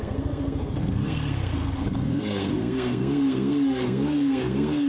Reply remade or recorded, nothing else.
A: remade